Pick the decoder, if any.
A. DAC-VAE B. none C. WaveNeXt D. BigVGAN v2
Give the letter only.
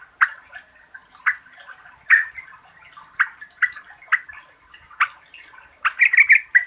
B